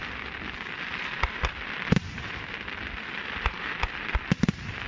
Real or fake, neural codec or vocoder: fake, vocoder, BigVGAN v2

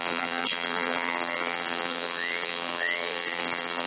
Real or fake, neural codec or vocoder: fake, vocoder, BigVGAN v2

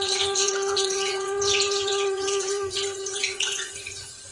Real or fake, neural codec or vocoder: fake, vocoder, Vocos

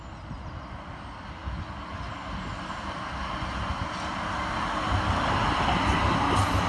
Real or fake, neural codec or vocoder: real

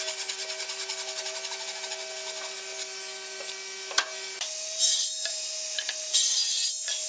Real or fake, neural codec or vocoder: real